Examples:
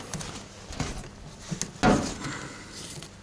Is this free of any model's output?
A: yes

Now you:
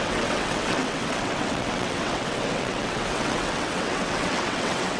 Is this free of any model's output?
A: no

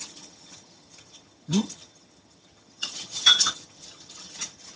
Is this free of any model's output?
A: no